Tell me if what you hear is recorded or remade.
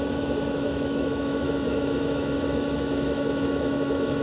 remade